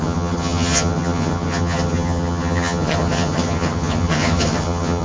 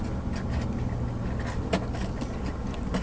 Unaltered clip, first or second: second